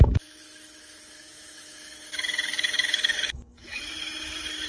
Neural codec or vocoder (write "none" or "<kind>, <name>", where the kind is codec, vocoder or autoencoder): autoencoder, DAC-VAE